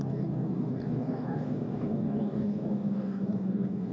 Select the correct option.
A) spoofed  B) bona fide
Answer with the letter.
A